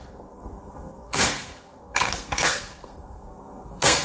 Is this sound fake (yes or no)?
yes